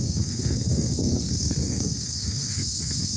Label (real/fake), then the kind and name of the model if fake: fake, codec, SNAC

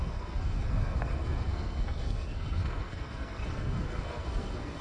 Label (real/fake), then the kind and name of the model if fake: fake, codec, SNAC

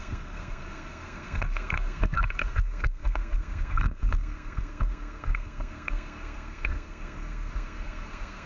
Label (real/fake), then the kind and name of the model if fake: fake, codec, SNAC